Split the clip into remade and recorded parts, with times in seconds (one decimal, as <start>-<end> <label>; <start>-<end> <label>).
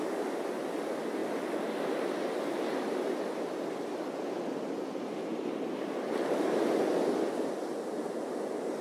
0.0-8.8 recorded